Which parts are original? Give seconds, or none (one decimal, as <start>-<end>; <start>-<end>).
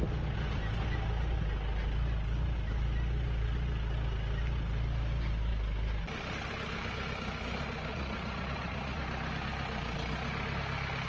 0.0-7.9; 9.0-11.1